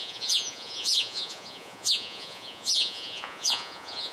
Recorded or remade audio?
remade